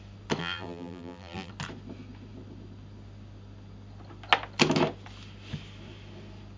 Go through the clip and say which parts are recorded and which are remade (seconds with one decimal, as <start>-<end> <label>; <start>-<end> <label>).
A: 0.0-0.4 recorded; 0.4-1.5 remade; 1.5-6.6 recorded